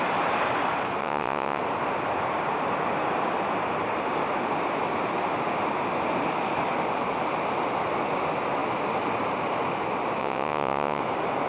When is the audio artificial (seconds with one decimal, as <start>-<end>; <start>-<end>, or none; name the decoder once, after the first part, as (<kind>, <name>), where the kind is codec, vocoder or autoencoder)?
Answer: 1.0-1.6 (vocoder, WaveNeXt); 10.2-11.0